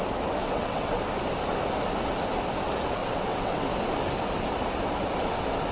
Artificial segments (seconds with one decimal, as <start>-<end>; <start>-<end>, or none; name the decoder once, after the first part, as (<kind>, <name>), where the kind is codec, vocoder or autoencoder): 0.4-1.0 (vocoder, WaveNeXt); 3.0-3.7